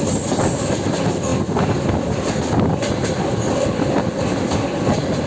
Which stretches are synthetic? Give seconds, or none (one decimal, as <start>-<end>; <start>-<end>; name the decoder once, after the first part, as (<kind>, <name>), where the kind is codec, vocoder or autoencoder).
3.0-4.5 (vocoder, BigVGAN v2)